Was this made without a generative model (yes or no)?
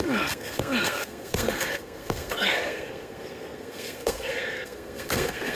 no